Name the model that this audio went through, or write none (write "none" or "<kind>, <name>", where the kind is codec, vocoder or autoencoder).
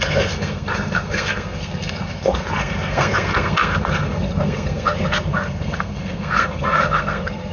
codec, SNAC